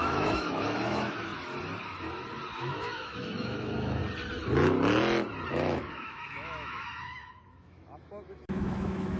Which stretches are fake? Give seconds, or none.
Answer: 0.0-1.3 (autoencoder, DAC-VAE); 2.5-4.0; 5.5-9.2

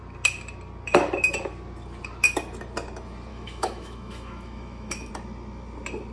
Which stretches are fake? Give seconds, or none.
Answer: 3.3-5.1 (autoencoder, DAC-VAE)

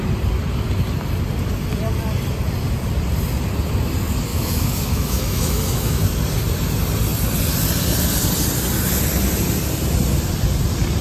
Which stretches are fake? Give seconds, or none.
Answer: 4.3-6.0 (autoencoder, DAC-VAE)

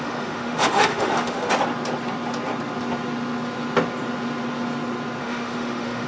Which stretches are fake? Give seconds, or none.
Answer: 0.0-1.5 (autoencoder, DAC-VAE); 5.2-6.1